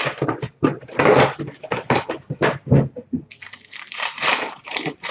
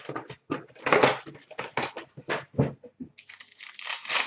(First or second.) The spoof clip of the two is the first